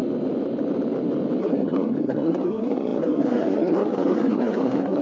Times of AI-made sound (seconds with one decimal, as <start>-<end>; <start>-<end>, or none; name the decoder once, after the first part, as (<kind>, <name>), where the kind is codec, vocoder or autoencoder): 1.4-5.0 (codec, SNAC)